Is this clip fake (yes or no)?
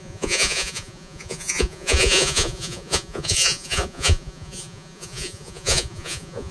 yes